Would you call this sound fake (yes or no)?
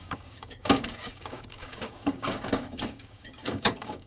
yes